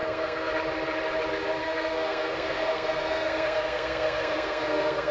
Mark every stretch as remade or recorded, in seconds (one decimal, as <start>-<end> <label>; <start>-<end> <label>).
0.0-0.5 remade; 0.5-1.6 recorded; 1.6-5.1 remade